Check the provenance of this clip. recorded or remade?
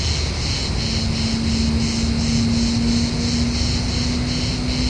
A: recorded